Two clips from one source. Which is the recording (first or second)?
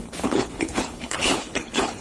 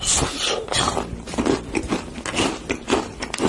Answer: second